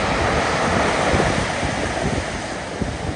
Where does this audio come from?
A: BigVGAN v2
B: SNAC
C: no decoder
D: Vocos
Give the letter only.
C